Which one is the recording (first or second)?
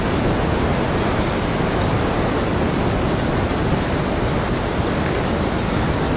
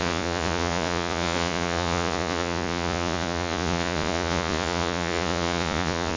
first